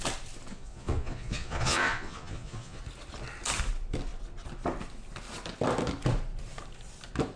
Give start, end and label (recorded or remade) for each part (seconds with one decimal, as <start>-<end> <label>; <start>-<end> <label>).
0.0-0.5 recorded; 0.5-2.8 remade; 2.8-7.4 recorded